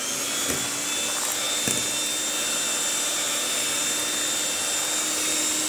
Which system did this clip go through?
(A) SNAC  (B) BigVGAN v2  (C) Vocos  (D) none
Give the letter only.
D